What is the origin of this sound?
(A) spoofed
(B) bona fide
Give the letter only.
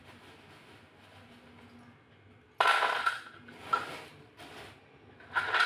B